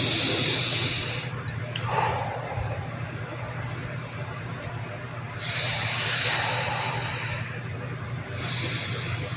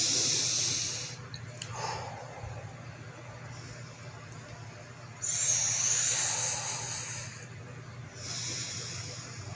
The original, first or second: second